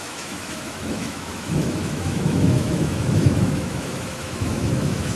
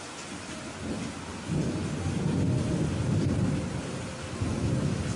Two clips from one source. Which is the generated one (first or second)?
first